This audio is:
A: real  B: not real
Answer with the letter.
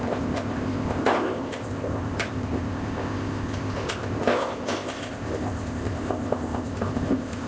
B